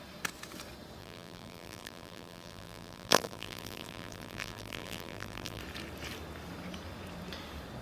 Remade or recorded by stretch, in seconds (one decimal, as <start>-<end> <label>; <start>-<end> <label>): 0.0-1.0 recorded; 1.0-5.6 remade; 5.6-7.8 recorded